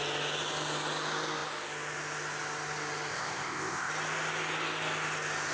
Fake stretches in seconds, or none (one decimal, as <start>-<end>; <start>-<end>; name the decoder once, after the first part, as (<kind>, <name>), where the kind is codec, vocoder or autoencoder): 3.1-3.9 (codec, ZipCodec)